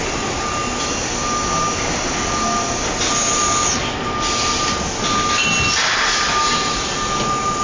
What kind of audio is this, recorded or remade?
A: recorded